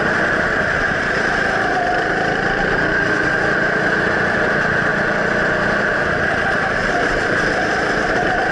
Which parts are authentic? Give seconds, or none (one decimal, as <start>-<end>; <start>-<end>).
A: 4.9-5.8